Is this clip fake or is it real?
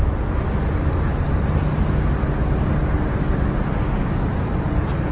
real